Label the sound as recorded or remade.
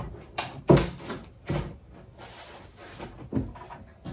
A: recorded